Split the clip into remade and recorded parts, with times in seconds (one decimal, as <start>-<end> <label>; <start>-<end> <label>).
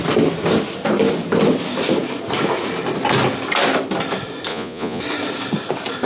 0.0-4.5 recorded; 4.5-5.0 remade; 5.0-6.1 recorded